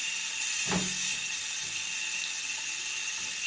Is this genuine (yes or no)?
yes